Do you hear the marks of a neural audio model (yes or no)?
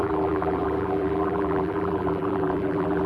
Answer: yes